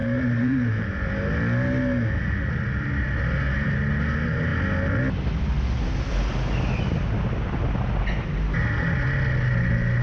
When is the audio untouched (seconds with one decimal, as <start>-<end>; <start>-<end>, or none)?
0.9-10.0